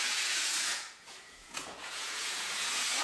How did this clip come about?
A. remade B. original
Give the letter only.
A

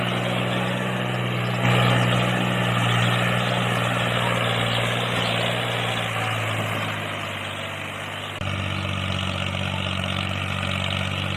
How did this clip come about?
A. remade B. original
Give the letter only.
B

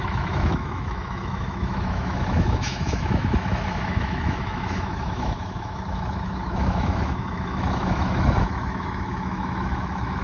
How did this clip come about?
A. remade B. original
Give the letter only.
A